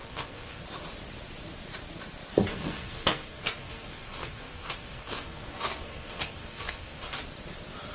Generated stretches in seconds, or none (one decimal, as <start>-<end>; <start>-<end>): 0.0-0.6; 2.5-7.2